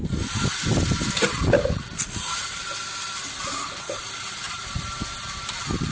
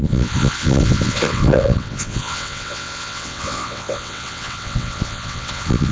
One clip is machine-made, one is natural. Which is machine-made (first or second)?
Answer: second